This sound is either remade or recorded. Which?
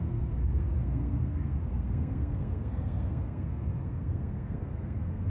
remade